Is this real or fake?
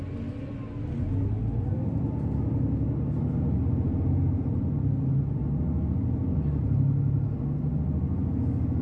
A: real